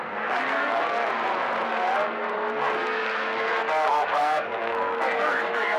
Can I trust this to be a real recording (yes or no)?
no